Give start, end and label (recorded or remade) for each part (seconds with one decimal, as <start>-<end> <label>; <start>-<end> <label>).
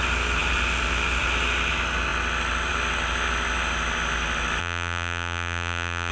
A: 0.0-4.6 recorded; 4.6-6.1 remade